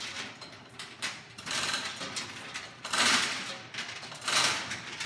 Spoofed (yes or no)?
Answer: yes